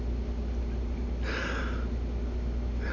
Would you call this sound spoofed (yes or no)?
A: no